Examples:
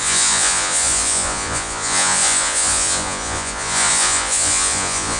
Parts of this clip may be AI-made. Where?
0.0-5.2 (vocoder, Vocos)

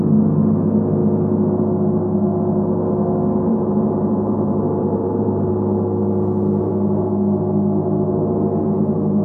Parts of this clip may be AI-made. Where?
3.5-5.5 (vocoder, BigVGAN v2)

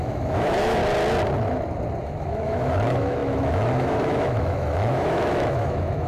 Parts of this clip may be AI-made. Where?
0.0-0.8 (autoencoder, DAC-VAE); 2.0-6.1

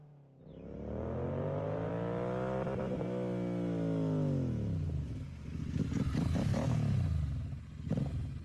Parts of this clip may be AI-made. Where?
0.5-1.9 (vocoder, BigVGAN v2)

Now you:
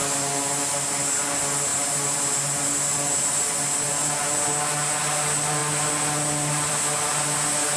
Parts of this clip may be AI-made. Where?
none

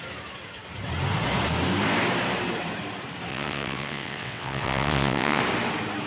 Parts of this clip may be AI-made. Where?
3.3-5.4 (vocoder, WaveNeXt)

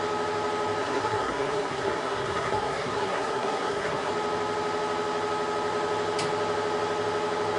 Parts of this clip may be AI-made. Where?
0.8-4.1 (codec, SNAC)